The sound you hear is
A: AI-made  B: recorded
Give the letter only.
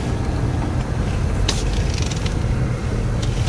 B